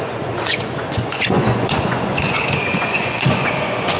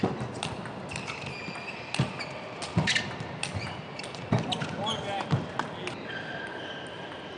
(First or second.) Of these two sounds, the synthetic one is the first